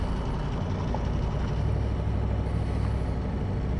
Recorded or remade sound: recorded